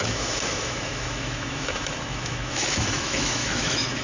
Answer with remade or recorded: remade